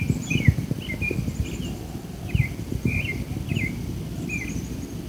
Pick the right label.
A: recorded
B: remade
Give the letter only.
A